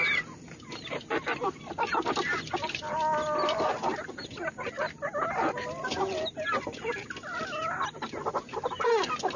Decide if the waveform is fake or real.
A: real